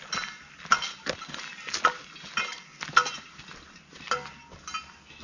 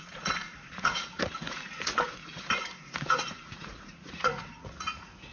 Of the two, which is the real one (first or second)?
first